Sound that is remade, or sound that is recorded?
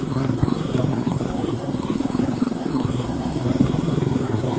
remade